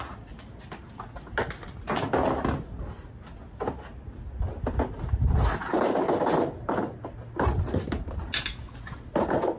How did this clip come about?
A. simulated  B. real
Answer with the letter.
B